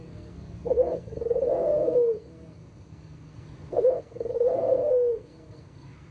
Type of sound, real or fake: fake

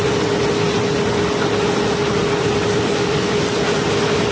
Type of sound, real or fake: real